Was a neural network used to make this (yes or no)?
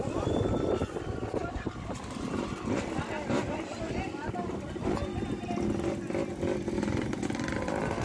no